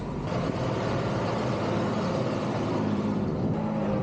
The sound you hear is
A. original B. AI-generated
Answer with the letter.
B